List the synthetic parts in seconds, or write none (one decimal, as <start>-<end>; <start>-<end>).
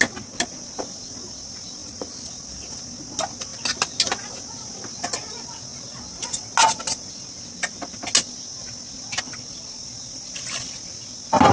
1.8-2.3